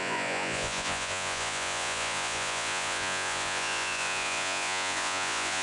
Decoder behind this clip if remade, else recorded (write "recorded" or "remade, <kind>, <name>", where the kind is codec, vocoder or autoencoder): remade, vocoder, Vocos